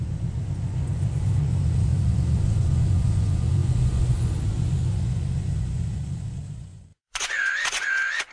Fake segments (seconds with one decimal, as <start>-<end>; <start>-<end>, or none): 0.0-8.3